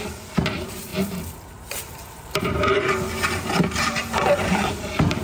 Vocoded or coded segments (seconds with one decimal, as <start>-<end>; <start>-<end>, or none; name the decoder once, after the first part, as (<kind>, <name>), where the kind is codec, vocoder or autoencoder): 0.0-0.9 (vocoder, BigVGAN v2); 1.5-5.2